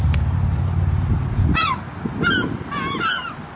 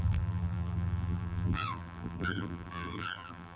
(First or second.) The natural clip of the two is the first